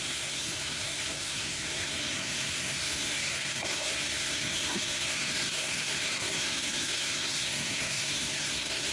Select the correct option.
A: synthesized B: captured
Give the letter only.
A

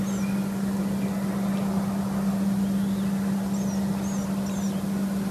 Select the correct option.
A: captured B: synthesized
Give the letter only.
A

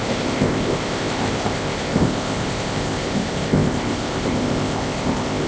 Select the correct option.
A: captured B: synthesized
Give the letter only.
B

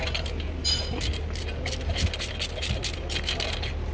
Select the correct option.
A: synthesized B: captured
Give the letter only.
B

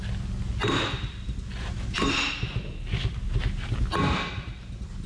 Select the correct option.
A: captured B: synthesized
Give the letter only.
A